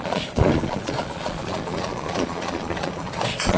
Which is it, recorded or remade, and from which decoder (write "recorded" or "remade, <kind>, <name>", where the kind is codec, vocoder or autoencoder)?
remade, vocoder, Vocos